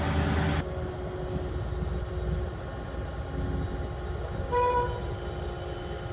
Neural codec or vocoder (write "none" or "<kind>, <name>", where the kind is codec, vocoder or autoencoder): none